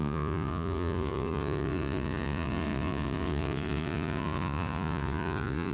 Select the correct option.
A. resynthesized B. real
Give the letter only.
A